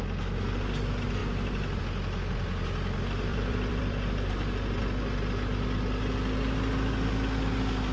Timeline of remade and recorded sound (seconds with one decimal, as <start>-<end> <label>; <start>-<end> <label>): 0.0-3.3 recorded; 3.3-4.3 remade; 4.3-7.9 recorded